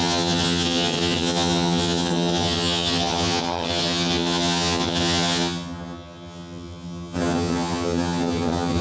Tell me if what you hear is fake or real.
fake